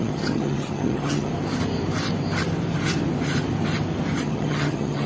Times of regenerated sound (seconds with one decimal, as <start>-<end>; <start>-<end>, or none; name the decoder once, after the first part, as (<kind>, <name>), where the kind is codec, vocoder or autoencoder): 0.0-1.3 (vocoder, HiFi-GAN); 4.2-5.1